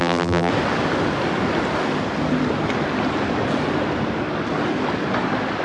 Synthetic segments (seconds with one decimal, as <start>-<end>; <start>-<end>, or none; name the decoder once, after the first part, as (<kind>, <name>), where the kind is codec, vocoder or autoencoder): 0.0-0.5 (vocoder, BigVGAN v2)